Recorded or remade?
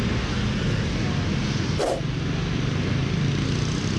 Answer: recorded